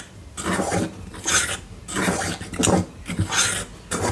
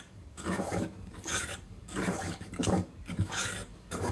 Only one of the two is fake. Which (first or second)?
second